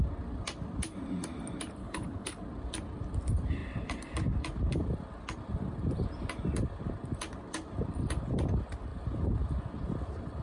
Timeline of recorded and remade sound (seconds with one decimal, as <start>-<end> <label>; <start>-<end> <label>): 0.0-1.8 recorded; 1.8-2.4 remade; 2.4-10.4 recorded